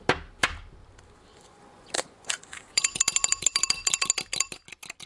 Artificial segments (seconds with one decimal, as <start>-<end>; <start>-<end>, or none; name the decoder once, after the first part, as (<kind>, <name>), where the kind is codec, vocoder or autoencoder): 1.3-2.8 (vocoder, Vocos)